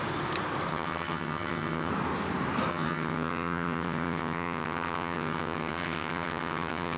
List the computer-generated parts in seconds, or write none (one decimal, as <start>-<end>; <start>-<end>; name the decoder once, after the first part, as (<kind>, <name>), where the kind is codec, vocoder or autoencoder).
0.7-1.9 (vocoder, HiFi-GAN); 2.7-7.0